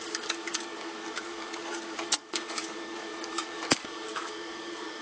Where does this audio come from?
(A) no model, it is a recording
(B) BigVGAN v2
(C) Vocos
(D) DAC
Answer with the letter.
D